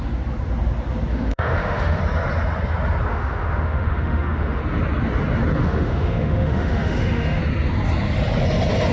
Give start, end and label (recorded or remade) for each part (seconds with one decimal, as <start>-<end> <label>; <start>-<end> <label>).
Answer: 0.0-1.1 recorded; 1.1-2.0 remade; 2.0-3.1 recorded; 3.1-4.6 remade; 4.6-5.6 recorded; 5.6-7.4 remade; 7.4-8.9 recorded